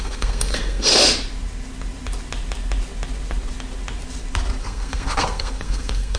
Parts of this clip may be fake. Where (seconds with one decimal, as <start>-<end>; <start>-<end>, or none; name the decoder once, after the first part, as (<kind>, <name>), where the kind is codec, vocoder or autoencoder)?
0.0-0.9 (codec, SNAC); 4.6-6.2